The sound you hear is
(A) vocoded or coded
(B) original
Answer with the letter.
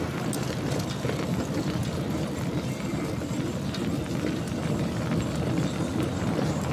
B